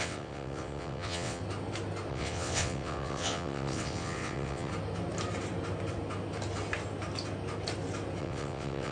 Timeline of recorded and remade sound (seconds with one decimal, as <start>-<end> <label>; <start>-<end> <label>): 0.0-1.4 remade; 1.4-2.1 recorded; 2.1-4.7 remade; 4.7-8.2 recorded; 8.2-8.9 remade